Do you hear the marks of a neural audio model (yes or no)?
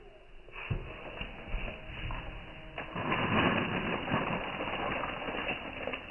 no